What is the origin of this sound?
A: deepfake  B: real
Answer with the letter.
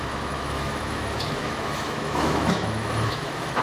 A